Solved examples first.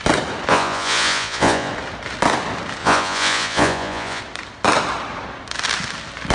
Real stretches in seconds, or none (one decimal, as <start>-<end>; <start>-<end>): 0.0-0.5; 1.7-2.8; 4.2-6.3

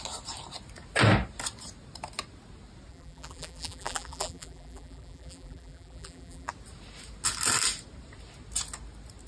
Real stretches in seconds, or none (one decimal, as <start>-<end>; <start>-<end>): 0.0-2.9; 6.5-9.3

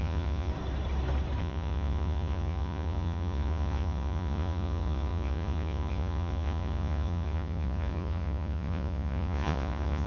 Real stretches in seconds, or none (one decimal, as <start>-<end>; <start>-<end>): 0.5-1.4

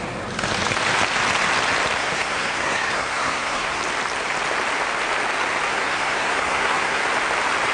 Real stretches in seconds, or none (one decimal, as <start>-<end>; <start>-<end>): 0.0-2.0; 3.8-5.7; 7.0-7.7